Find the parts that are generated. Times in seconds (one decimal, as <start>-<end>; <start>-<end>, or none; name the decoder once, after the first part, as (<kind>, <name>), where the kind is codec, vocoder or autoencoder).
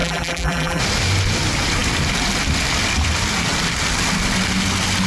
0.0-0.8 (vocoder, BigVGAN v2)